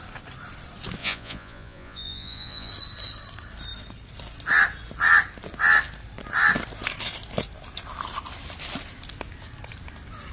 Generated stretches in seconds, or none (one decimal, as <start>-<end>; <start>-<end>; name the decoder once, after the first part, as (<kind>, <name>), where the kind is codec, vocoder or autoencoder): 1.0-2.7 (vocoder, Vocos)